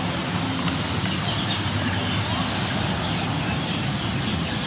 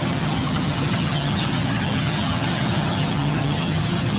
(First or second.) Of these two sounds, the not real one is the second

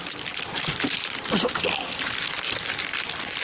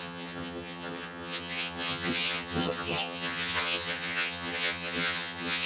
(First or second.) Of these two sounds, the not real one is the second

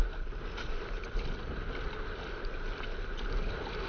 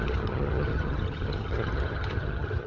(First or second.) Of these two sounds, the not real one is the second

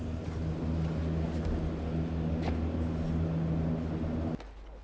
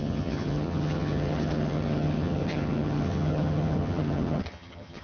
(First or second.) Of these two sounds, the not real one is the second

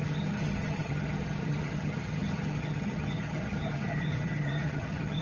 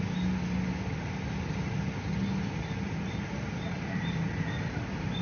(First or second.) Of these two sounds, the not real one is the first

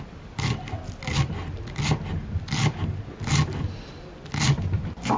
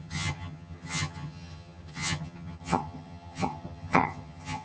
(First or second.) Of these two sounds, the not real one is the second